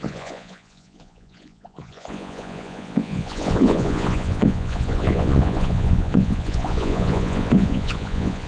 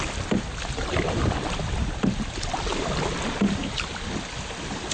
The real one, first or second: second